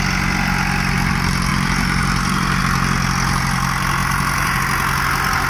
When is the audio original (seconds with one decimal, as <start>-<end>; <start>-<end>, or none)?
0.0-1.5; 2.6-4.0; 4.6-5.5